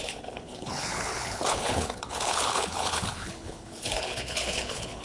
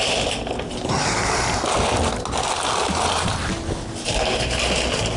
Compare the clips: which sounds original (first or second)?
second